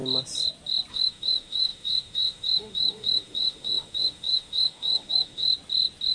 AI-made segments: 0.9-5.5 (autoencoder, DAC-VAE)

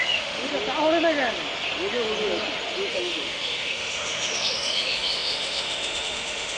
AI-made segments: 0.0-0.5 (autoencoder, DAC-VAE); 2.9-6.6